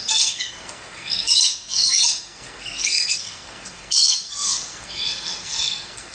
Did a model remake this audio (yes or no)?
yes